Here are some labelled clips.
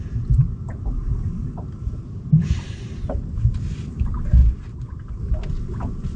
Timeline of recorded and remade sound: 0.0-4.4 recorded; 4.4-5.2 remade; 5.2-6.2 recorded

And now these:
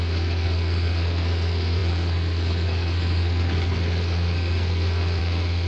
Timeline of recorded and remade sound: 0.0-5.7 remade

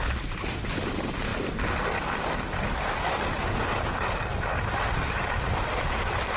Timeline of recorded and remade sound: 0.0-1.3 remade; 1.3-2.4 recorded; 2.4-6.4 remade

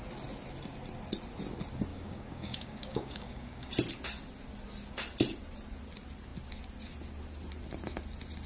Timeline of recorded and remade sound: 0.0-1.9 recorded; 1.9-3.7 remade; 3.7-8.5 recorded

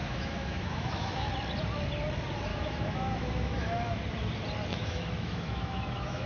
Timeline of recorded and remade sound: 0.0-1.3 remade; 1.3-2.5 recorded; 2.5-4.0 remade; 4.0-4.7 recorded; 4.7-6.3 remade

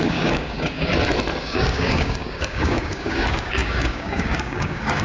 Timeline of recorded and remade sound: 0.0-0.9 remade; 0.9-1.4 recorded; 1.4-5.0 remade

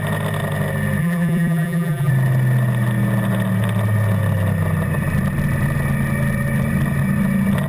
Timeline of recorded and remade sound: 0.0-1.0 recorded; 1.0-2.1 remade; 2.1-7.7 recorded